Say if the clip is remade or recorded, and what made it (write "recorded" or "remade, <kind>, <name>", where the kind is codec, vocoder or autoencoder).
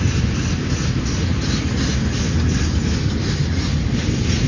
recorded